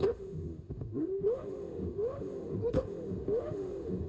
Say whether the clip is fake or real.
fake